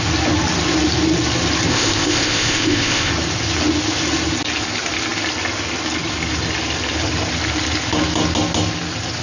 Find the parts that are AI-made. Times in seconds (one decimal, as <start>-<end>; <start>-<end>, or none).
1.7-3.1